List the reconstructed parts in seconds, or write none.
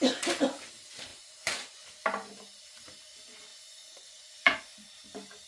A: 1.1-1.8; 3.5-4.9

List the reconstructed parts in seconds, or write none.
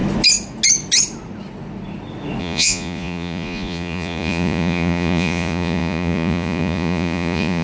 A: 2.4-7.6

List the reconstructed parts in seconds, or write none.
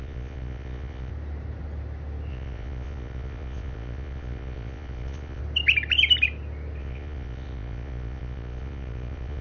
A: 0.0-1.1; 2.3-5.4; 6.8-9.4